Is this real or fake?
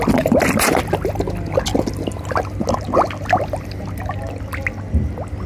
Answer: real